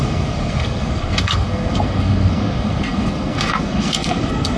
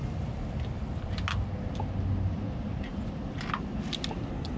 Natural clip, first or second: second